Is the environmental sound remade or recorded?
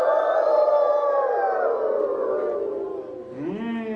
recorded